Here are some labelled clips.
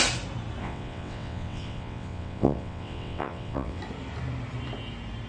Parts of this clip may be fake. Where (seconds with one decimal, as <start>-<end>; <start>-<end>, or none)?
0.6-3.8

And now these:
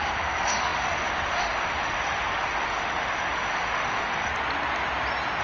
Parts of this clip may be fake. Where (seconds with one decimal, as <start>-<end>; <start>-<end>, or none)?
0.0-4.3

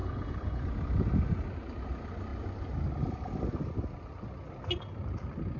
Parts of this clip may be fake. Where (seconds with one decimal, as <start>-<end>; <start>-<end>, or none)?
0.0-0.6

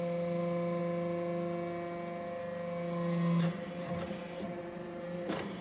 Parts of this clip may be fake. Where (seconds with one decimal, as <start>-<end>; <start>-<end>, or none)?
0.0-0.8; 4.2-5.6

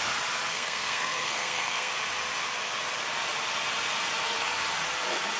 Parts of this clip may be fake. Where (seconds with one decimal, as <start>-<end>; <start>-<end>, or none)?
0.5-1.9